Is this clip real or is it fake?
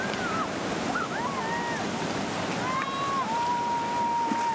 real